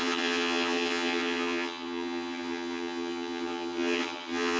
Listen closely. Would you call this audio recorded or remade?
remade